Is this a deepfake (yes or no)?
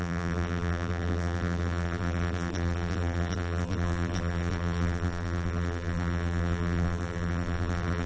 yes